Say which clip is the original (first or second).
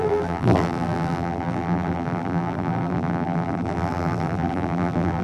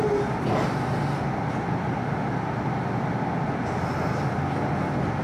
second